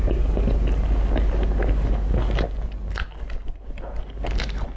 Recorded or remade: recorded